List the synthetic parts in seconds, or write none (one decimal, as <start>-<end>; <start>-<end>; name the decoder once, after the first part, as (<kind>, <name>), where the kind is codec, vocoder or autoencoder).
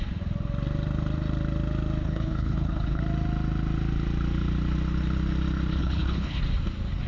2.0-3.0 (codec, HILCodec); 5.8-6.4